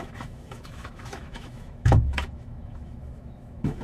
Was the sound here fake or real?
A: fake